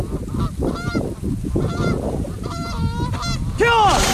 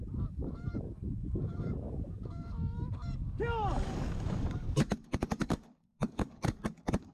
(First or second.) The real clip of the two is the first